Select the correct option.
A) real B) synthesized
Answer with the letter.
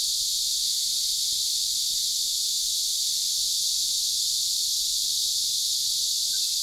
A